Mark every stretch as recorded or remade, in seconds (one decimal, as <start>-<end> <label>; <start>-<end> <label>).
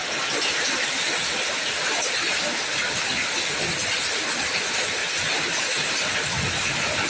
0.0-7.1 recorded